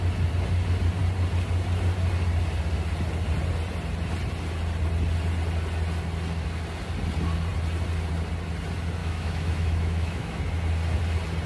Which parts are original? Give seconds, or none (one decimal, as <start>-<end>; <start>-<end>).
0.0-9.0; 10.4-11.5